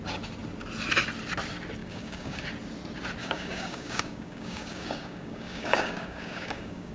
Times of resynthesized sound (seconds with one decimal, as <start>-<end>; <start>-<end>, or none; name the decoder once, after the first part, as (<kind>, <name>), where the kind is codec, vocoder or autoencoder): 1.8-2.4 (codec, DAC); 3.2-6.9